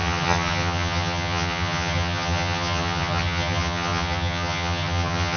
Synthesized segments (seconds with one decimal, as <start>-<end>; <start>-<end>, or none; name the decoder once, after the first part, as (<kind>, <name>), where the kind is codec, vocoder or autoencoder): 0.0-5.4 (vocoder, HiFi-GAN)